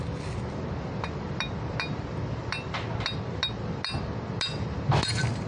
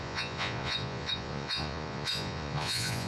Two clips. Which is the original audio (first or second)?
first